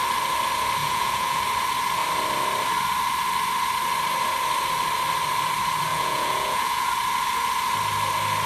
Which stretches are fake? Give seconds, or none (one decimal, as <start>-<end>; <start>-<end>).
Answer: 0.8-1.4; 5.9-6.9